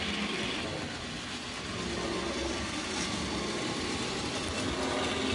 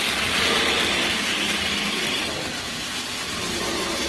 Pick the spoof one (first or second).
second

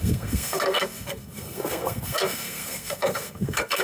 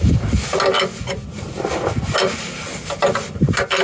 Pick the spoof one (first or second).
first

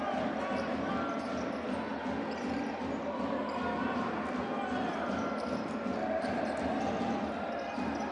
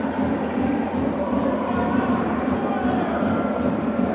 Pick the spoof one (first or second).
second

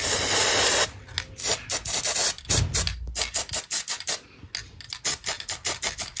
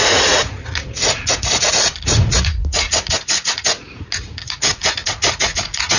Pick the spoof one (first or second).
second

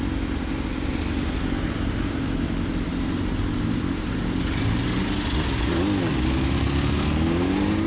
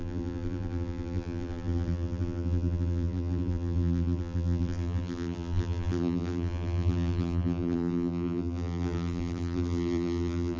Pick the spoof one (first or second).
second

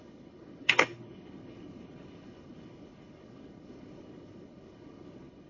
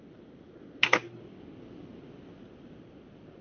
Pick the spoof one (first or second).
first